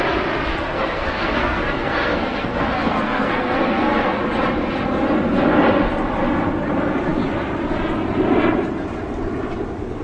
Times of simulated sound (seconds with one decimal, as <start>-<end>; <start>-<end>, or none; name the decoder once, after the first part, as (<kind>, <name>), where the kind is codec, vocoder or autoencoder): 0.5-4.2 (codec, SNAC)